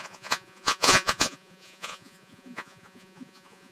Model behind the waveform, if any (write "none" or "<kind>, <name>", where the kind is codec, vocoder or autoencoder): vocoder, Vocos